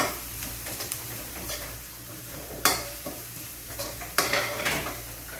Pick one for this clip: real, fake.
fake